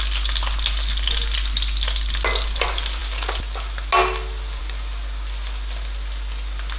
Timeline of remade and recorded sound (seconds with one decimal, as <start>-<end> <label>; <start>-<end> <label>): 0.0-6.8 recorded

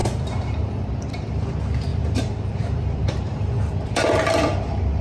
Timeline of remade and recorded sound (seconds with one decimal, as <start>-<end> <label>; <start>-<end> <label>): 0.0-1.3 remade; 1.3-1.9 recorded; 1.9-5.0 remade